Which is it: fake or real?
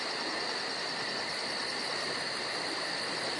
real